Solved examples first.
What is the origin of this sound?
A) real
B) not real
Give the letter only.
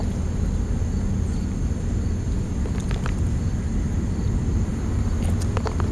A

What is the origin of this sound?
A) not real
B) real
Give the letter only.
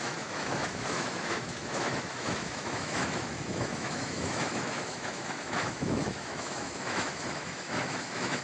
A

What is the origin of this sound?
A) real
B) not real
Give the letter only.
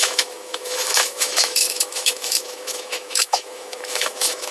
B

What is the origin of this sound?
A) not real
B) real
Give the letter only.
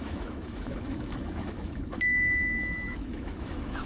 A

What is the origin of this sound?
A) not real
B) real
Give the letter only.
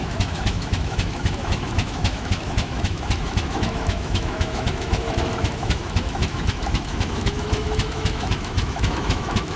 A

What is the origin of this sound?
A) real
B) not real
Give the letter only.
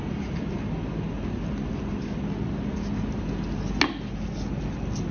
A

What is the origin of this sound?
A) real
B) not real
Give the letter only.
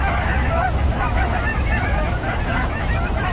B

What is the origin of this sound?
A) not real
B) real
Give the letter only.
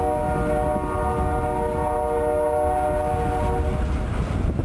B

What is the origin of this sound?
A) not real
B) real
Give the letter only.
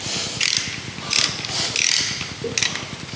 B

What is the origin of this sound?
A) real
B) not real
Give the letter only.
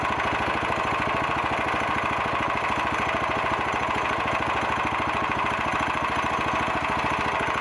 A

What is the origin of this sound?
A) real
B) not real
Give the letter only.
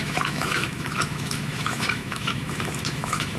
B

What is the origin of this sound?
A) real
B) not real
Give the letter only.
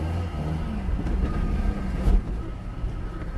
A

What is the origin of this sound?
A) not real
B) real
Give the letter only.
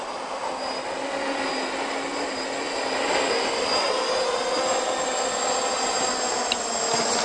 B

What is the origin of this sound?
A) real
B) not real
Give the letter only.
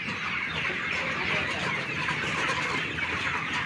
A